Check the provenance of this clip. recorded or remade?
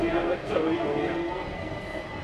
remade